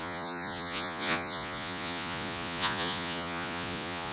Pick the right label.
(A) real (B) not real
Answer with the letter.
B